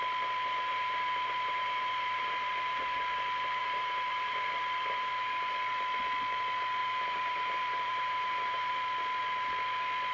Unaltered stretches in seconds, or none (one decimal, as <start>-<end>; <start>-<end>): 0.0-0.7; 5.1-6.8; 8.7-10.1